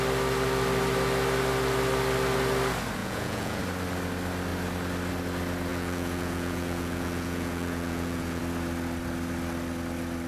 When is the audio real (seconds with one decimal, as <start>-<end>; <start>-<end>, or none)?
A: 0.0-3.0; 3.6-5.7; 8.4-10.3

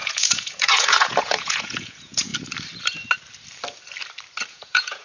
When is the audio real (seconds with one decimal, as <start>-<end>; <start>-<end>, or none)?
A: 2.3-4.5

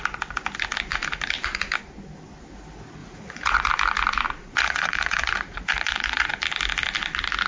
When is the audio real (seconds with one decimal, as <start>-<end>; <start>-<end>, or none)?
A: 0.0-3.0; 3.7-4.4; 6.3-7.5

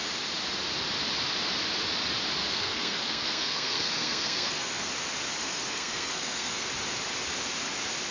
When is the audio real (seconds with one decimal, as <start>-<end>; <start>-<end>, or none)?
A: 0.0-2.4; 4.9-5.4; 6.7-8.1

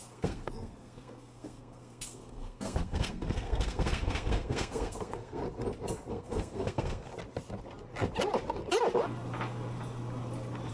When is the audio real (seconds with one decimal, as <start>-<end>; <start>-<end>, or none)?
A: 5.4-6.1; 7.1-10.7

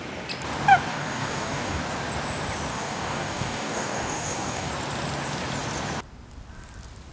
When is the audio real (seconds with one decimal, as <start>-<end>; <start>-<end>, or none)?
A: 0.0-0.9; 1.8-2.7; 4.7-7.1

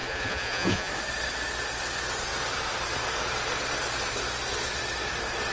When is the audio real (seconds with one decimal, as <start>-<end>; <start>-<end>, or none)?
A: 0.9-5.5

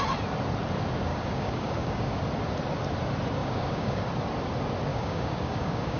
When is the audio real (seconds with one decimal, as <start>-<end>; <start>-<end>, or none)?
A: 0.0-1.1; 2.2-3.4; 4.0-4.9